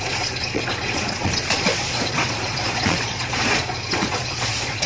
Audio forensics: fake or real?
fake